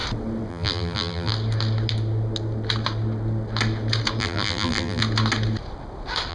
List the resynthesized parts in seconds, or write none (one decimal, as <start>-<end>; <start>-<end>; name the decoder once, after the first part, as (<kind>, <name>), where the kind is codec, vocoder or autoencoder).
0.5-1.3 (vocoder, BigVGAN v2); 4.2-5.0

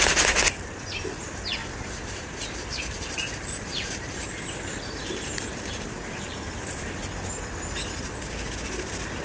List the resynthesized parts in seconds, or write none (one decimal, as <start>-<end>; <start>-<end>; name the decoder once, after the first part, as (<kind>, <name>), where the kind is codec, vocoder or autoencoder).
1.6-6.8 (vocoder, BigVGAN v2)

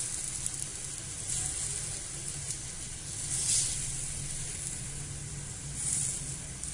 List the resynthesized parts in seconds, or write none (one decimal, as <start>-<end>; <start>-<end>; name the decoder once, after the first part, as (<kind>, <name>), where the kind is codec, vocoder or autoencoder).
none

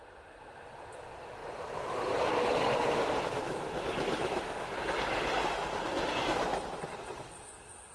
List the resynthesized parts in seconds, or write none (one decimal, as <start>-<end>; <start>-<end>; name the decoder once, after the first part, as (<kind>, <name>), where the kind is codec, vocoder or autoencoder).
none

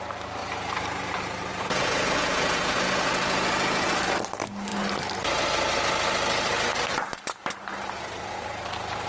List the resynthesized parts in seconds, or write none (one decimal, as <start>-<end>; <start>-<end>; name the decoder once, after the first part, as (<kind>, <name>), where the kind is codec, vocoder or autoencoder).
1.5-3.9 (vocoder, Vocos)

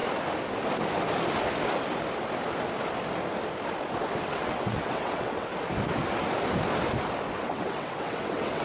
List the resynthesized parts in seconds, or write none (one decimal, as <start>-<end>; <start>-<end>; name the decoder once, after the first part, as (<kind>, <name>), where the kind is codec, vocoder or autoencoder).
4.2-5.5 (vocoder, WaveNeXt); 7.4-8.6